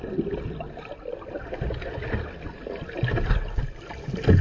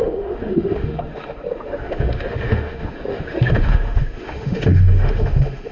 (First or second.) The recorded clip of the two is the first